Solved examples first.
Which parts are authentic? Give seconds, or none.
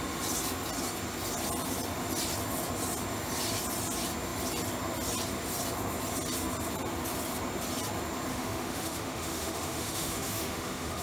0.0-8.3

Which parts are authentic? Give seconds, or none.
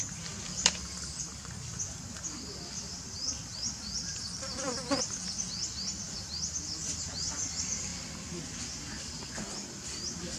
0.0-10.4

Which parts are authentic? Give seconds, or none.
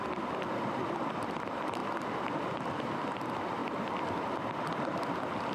0.0-5.5